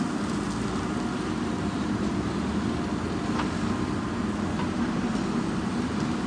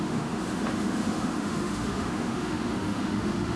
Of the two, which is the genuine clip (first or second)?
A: first